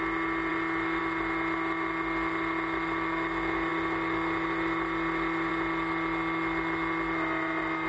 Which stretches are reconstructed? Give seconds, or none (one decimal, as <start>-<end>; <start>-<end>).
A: none